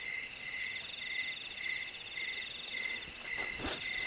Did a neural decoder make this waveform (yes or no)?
no